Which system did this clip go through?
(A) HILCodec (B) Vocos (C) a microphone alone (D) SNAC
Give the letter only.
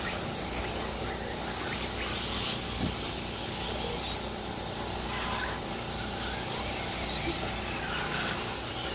C